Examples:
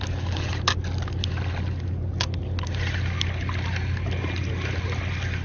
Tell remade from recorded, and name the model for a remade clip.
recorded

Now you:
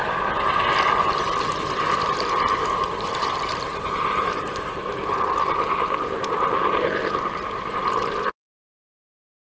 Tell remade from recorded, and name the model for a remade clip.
recorded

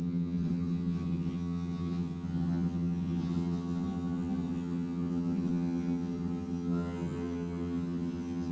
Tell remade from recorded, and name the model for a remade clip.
remade, vocoder, HiFi-GAN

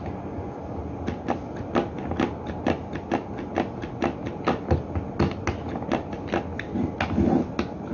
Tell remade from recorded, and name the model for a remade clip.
recorded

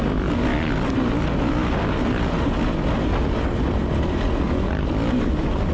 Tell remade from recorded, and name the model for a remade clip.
recorded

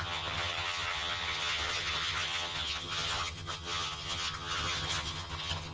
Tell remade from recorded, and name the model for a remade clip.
remade, vocoder, HiFi-GAN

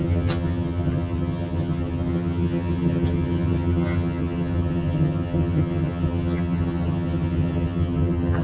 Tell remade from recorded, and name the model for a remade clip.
remade, vocoder, HiFi-GAN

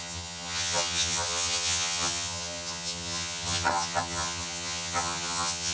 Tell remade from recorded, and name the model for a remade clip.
remade, vocoder, HiFi-GAN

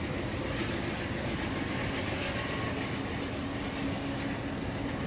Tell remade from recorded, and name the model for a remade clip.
recorded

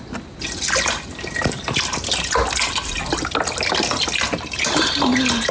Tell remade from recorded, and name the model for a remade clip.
recorded